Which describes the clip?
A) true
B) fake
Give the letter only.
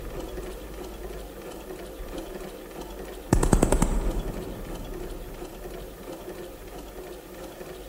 A